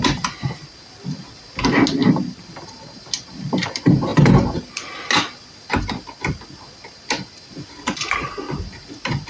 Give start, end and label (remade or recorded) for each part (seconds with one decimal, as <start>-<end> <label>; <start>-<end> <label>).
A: 0.0-9.3 recorded